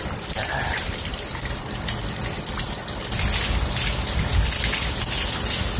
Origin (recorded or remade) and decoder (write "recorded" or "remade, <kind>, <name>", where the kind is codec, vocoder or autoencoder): recorded